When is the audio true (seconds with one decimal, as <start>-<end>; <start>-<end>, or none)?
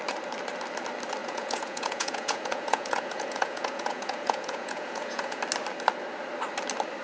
0.0-1.2; 5.4-7.0